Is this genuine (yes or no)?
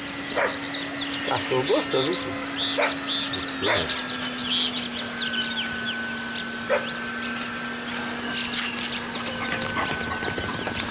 yes